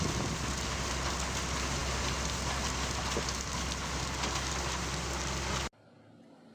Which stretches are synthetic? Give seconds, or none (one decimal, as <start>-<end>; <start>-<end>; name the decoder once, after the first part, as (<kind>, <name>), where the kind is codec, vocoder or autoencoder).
none